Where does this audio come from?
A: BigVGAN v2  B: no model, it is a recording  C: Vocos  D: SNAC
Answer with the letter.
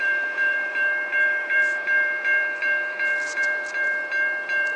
A